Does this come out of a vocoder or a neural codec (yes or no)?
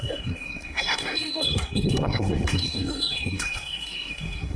yes